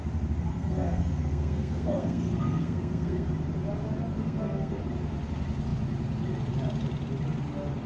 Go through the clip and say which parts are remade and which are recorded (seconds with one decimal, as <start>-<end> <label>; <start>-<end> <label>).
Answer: 0.0-0.5 recorded; 0.5-3.3 remade; 3.3-4.1 recorded; 4.1-4.8 remade; 4.8-7.9 recorded

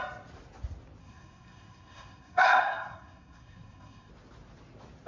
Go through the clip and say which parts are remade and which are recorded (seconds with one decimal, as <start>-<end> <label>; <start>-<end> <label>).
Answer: 0.0-1.0 recorded; 1.0-4.1 remade; 4.1-5.1 recorded

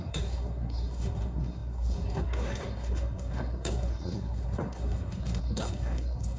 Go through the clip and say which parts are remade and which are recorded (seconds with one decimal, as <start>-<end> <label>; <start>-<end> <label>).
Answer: 0.0-6.4 remade